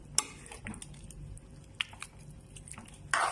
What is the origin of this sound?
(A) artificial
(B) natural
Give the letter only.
B